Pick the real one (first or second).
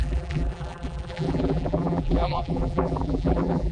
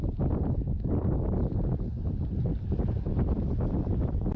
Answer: second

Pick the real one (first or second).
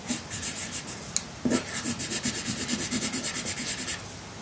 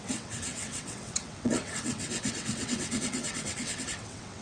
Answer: first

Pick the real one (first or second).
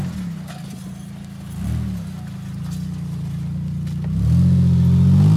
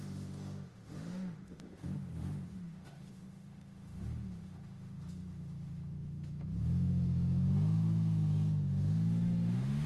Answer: first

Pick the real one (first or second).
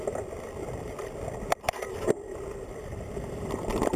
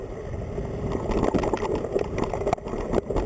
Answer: second